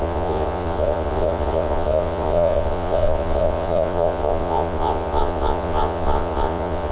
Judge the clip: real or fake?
fake